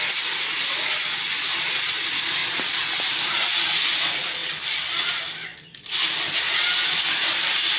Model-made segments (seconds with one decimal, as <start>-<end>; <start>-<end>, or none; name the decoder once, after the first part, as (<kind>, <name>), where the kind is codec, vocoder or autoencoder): 2.4-3.2 (vocoder, BigVGAN v2); 5.5-6.5